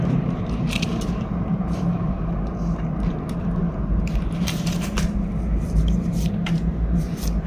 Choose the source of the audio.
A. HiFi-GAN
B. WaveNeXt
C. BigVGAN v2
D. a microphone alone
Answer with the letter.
C